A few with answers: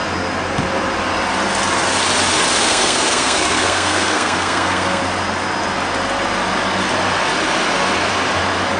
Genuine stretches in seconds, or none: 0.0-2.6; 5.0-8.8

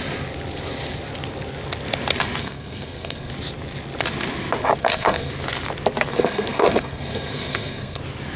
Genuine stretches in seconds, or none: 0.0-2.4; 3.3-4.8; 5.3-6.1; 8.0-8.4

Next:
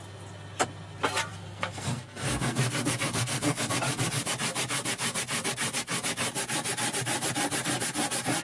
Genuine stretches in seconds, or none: 0.0-1.3; 3.7-8.4